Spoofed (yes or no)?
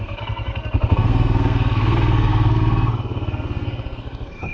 yes